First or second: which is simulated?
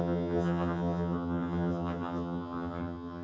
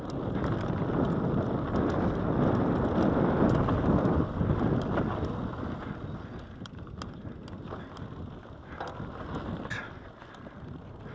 first